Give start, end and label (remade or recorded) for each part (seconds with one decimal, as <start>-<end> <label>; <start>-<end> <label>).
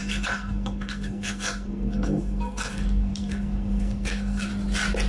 0.0-4.5 remade; 4.5-5.1 recorded